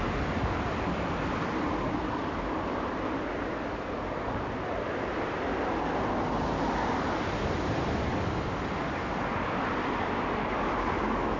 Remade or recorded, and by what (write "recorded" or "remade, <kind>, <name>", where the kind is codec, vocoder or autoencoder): recorded